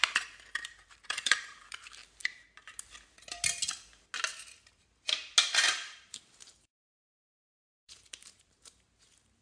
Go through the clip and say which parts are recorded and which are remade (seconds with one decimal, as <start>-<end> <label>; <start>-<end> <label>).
0.0-2.0 remade; 2.0-5.7 recorded; 5.7-9.4 remade